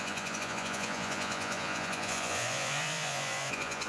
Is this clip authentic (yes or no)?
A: no